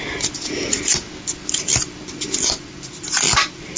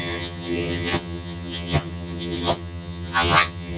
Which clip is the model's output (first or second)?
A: second